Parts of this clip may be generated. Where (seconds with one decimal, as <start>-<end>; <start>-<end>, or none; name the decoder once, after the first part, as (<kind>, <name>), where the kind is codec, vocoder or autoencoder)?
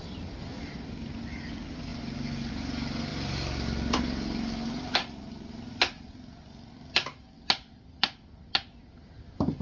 none